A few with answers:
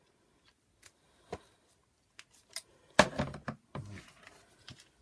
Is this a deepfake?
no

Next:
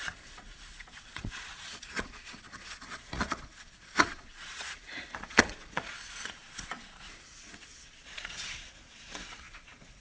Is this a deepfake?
yes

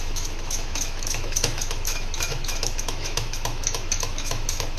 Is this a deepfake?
yes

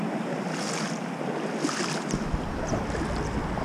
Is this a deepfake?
no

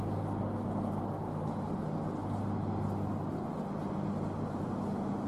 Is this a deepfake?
no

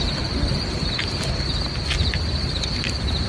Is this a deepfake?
no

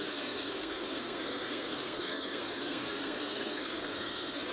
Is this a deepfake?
yes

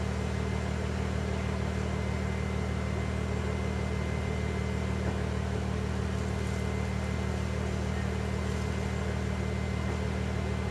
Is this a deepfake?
no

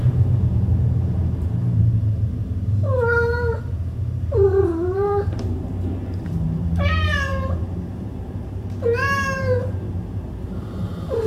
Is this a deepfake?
yes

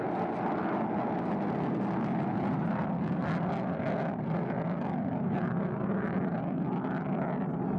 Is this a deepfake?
no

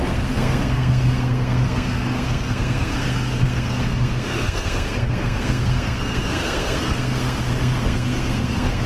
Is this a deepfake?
yes